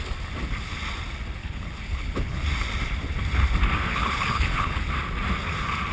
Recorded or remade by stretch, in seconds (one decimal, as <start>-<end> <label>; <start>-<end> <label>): 0.0-1.4 recorded; 1.4-2.4 remade; 2.4-3.9 recorded; 3.9-4.8 remade; 4.8-5.9 recorded